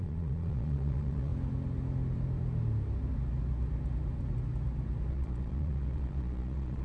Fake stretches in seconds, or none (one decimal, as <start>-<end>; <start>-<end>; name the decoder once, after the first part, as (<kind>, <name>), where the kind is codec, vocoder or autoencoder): 0.0-1.3 (vocoder, Vocos); 5.1-6.8